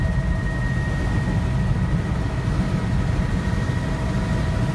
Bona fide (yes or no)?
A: yes